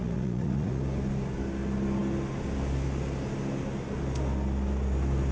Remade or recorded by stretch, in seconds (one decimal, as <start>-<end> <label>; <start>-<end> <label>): 0.0-0.8 remade; 0.8-5.3 recorded